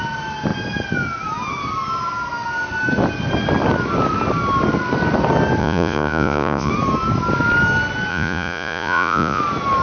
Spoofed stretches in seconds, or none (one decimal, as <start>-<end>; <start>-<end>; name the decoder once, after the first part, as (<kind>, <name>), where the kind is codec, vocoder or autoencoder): 5.6-6.7 (vocoder, Vocos); 8.1-9.4